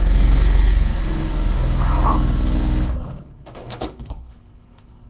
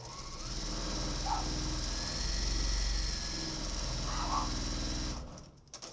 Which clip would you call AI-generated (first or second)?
first